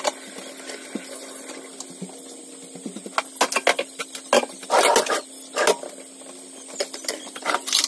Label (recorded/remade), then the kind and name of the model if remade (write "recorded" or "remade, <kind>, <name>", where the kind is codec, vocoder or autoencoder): recorded